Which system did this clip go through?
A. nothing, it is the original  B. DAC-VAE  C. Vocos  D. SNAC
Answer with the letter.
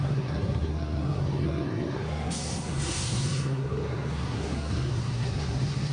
D